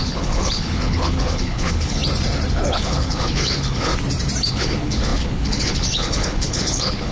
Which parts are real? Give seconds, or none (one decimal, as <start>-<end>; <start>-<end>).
2.0-2.5; 3.9-4.5